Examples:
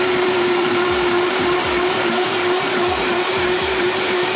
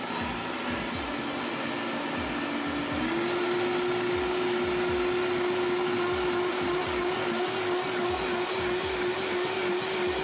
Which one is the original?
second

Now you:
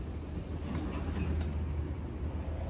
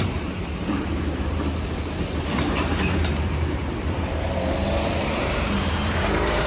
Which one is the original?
first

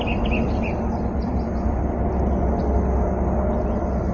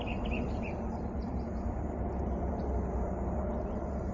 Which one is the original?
first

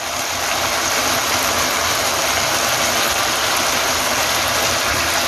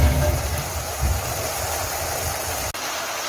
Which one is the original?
first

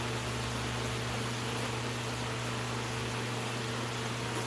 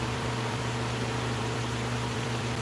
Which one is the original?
first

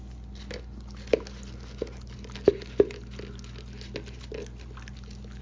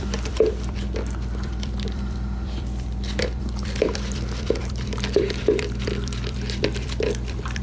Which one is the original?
first